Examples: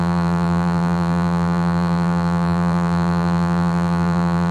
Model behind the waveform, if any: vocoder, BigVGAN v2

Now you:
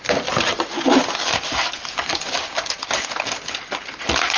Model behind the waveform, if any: none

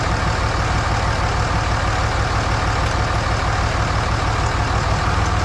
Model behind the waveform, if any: none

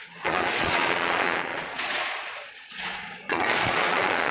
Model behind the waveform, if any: vocoder, Vocos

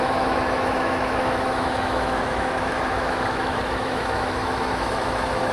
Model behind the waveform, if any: autoencoder, DAC-VAE